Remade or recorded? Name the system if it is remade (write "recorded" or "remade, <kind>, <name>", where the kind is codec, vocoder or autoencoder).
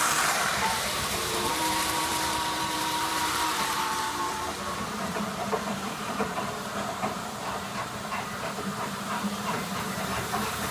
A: remade, vocoder, BigVGAN v2